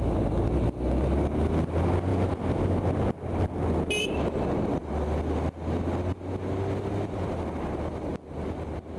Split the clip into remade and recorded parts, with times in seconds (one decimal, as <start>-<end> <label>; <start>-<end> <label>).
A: 0.0-9.0 recorded